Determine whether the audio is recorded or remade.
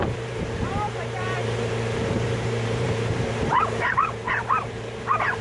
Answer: remade